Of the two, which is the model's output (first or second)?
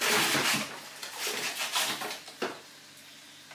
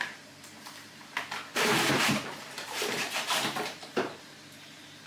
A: second